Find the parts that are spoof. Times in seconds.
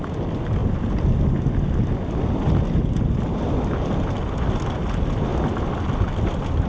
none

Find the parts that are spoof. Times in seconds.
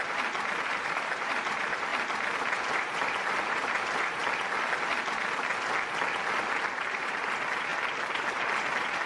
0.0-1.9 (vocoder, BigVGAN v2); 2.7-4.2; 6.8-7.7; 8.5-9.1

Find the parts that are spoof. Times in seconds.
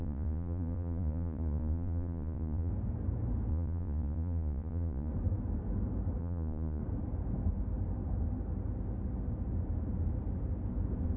0.0-2.7 (vocoder, Vocos); 3.5-5.1; 6.2-6.8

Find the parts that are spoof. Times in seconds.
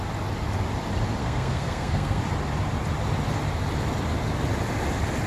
1.2-2.2 (codec, SNAC)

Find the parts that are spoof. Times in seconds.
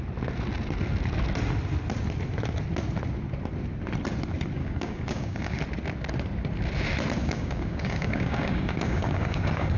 4.6-5.6 (codec, DAC); 7.2-9.8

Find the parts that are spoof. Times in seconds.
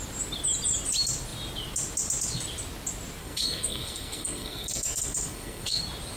3.2-5.8 (codec, SNAC)